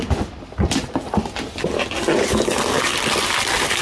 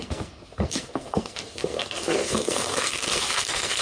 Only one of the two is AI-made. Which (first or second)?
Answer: second